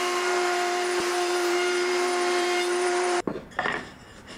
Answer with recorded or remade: remade